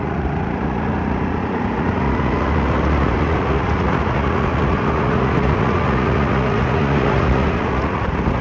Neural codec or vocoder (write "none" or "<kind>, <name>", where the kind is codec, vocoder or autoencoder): vocoder, Vocos